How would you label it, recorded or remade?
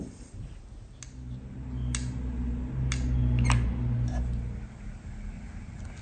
recorded